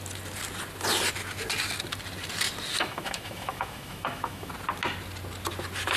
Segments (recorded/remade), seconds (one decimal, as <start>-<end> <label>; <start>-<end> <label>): 0.0-2.7 recorded; 2.7-4.5 remade; 4.5-6.0 recorded